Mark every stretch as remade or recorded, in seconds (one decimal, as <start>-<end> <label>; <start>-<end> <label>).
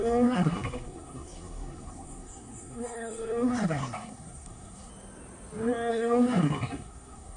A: 0.0-4.9 remade; 4.9-5.9 recorded; 5.9-7.4 remade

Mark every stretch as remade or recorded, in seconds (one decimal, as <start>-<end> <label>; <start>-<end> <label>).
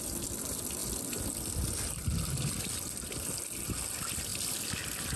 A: 0.0-5.2 recorded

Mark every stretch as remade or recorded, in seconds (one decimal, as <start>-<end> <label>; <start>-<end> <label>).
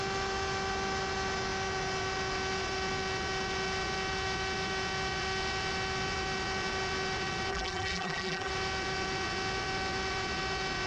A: 0.0-7.5 recorded; 7.5-8.5 remade; 8.5-10.9 recorded